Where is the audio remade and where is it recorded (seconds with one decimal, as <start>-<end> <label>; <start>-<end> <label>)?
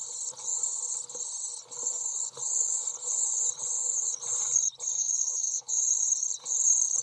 0.0-4.9 recorded; 4.9-5.7 remade; 5.7-7.0 recorded